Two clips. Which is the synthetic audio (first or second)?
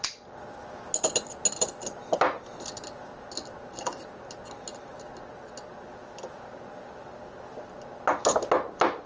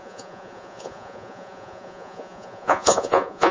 second